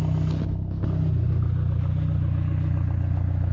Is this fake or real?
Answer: real